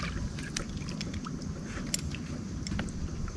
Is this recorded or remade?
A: recorded